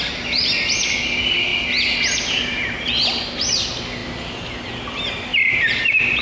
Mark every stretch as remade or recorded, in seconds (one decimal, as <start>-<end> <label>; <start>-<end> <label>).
0.0-1.5 recorded; 1.5-3.6 remade; 3.6-5.3 recorded; 5.3-6.2 remade